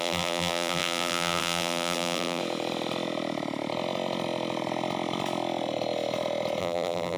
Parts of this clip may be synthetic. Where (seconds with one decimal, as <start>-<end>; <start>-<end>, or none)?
0.0-2.4; 6.6-7.2